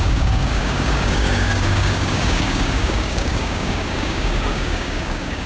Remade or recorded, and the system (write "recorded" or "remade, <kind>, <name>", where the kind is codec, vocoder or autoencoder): remade, codec, DAC